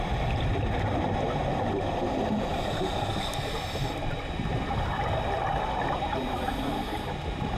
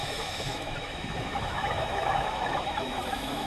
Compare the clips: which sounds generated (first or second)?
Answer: second